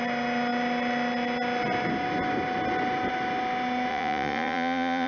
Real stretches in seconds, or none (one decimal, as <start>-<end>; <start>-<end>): 0.0-3.9